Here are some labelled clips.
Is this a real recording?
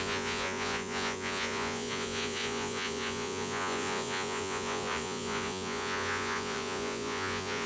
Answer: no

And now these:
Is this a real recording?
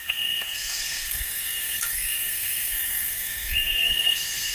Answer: no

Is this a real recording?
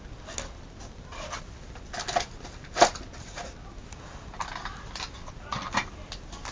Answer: yes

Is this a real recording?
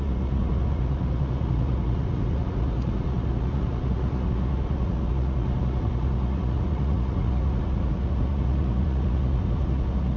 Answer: no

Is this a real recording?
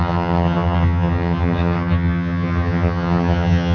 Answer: no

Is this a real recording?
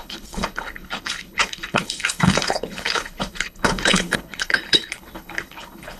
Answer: no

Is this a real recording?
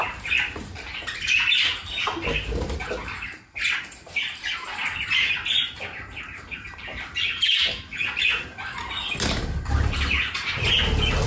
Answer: yes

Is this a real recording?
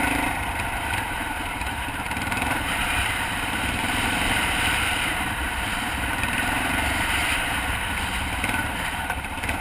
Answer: no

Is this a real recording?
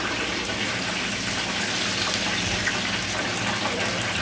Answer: yes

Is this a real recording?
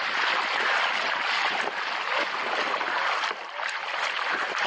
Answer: yes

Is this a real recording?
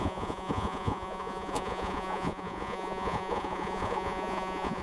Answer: no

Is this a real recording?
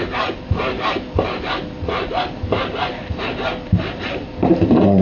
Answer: yes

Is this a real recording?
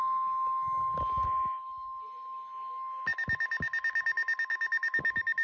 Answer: yes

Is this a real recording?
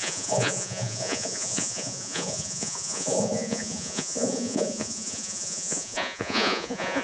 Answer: no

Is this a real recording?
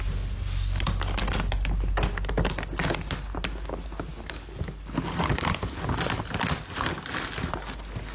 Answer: yes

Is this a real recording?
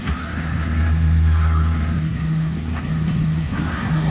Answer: no